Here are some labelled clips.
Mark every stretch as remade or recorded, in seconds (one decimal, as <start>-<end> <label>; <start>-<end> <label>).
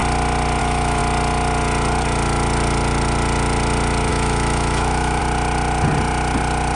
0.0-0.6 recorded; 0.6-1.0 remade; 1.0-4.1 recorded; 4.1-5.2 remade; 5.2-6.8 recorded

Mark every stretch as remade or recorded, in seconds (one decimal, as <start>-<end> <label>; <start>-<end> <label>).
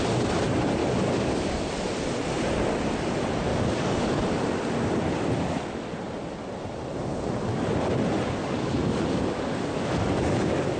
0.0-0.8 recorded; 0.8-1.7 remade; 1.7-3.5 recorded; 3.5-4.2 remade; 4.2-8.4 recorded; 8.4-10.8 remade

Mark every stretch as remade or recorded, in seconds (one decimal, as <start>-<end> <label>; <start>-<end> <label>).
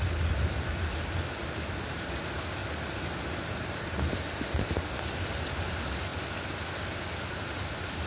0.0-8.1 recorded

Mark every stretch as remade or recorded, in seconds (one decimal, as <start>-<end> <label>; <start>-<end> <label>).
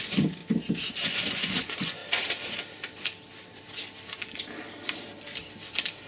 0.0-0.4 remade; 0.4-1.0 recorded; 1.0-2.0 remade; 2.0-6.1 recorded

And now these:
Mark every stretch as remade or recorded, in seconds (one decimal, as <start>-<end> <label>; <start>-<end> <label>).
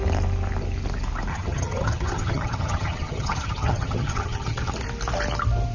0.0-1.3 recorded; 1.3-4.7 remade; 4.7-5.7 recorded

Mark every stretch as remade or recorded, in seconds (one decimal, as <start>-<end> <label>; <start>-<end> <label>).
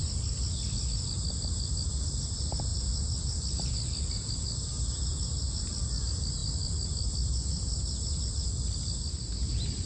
0.0-9.9 recorded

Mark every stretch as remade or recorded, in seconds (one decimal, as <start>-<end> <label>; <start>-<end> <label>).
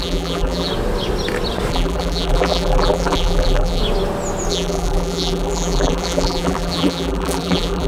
0.0-0.7 remade; 0.7-1.7 recorded; 1.7-3.8 remade; 3.8-4.5 recorded; 4.5-7.9 remade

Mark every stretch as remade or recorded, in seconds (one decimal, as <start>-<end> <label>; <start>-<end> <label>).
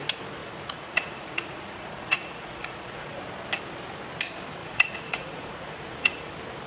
0.0-0.4 recorded; 0.4-3.2 remade; 3.2-4.6 recorded; 4.6-6.3 remade; 6.3-6.7 recorded